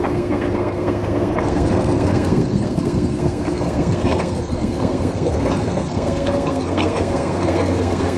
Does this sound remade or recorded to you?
remade